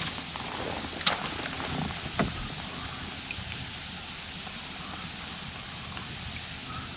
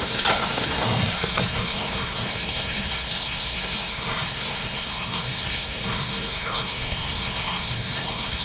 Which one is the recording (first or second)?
first